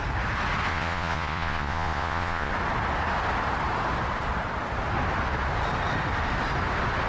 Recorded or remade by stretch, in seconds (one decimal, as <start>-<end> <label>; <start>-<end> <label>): 0.0-0.7 recorded; 0.7-2.5 remade; 2.5-7.1 recorded